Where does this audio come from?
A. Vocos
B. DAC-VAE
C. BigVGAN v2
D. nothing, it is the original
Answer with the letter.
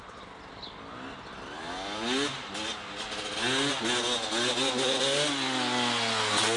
D